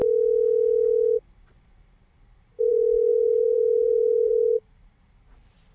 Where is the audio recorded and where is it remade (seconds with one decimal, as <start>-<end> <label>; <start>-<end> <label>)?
0.0-2.7 recorded; 2.7-5.7 remade